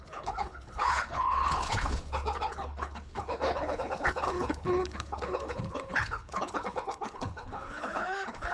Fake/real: fake